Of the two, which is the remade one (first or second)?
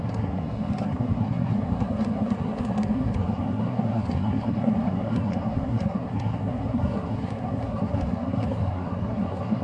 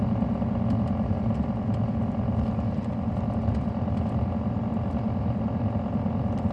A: first